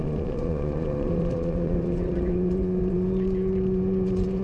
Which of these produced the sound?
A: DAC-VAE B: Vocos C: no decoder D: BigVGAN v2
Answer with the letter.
B